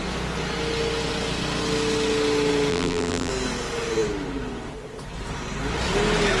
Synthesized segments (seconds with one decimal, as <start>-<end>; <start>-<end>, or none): 2.7-3.3